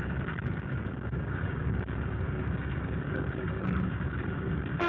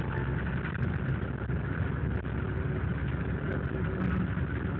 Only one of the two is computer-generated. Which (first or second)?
first